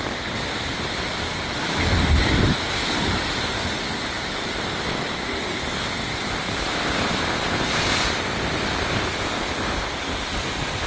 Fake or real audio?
real